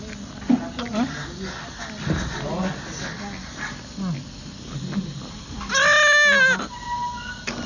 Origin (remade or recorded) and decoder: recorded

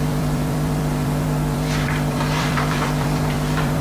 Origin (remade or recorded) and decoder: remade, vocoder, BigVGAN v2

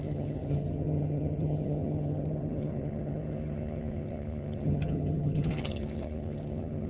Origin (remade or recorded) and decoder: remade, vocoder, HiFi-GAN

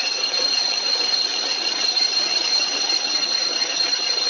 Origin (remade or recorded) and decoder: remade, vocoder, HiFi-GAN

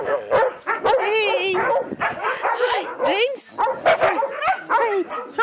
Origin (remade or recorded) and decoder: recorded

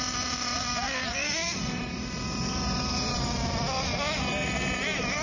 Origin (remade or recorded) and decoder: remade, vocoder, BigVGAN v2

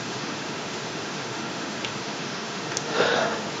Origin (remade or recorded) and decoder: remade, autoencoder, DAC-VAE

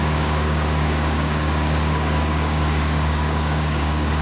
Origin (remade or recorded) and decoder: remade, codec, DAC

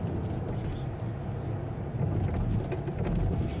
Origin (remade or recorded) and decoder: recorded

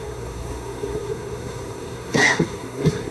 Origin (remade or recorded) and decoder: remade, codec, SNAC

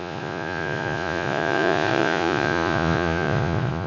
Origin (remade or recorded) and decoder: remade, vocoder, Vocos